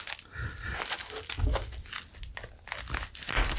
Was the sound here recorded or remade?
recorded